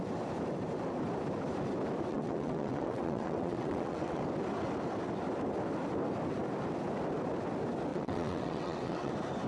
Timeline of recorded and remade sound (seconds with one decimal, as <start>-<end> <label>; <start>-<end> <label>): 0.0-2.1 recorded; 2.1-4.2 remade; 4.2-7.9 recorded; 7.9-9.1 remade; 9.1-9.5 recorded